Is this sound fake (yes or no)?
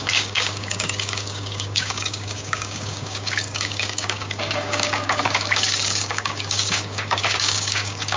yes